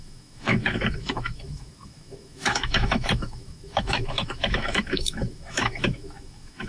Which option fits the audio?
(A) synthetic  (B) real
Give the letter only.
A